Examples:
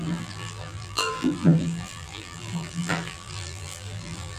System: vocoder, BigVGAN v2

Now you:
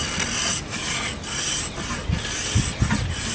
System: none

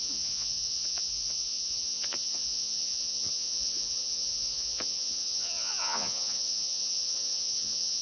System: vocoder, Vocos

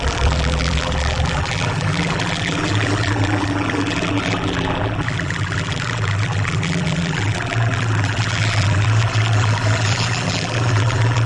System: vocoder, BigVGAN v2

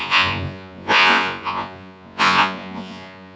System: vocoder, Vocos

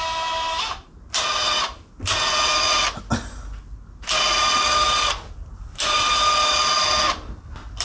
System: none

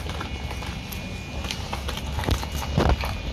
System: none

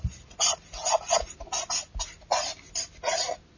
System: none